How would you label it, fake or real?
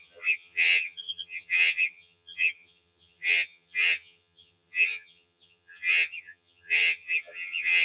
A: fake